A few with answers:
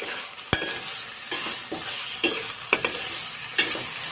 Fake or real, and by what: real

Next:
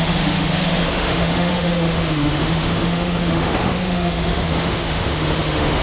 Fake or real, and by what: fake, autoencoder, DAC-VAE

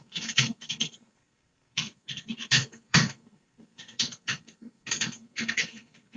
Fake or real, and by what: fake, codec, SNAC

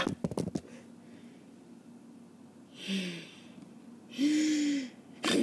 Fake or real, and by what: real